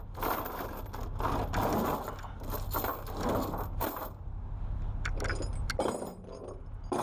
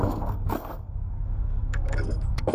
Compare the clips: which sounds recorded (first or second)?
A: first